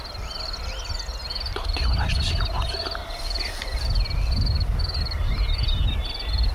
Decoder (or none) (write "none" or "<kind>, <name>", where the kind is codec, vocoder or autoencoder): none